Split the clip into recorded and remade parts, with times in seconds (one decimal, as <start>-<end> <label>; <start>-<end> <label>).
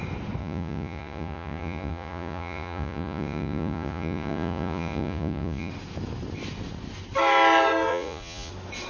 0.0-0.4 recorded; 0.4-5.7 remade; 5.7-7.9 recorded; 7.9-8.5 remade; 8.5-8.9 recorded